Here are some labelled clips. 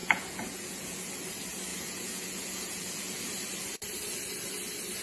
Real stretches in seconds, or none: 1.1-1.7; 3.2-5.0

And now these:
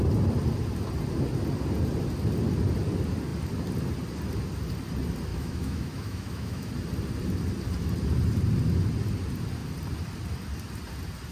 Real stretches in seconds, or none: 0.0-5.3; 6.7-11.3

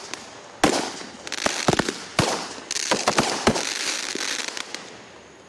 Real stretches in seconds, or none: 0.0-2.1; 4.1-5.5

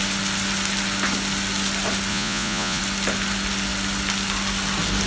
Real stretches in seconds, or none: 0.0-2.1; 2.8-5.1

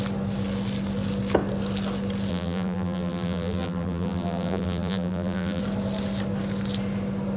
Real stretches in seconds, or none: 0.0-2.3; 5.6-7.4